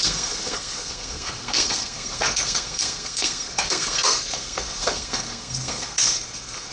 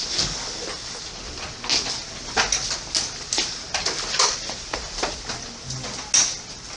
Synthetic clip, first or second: first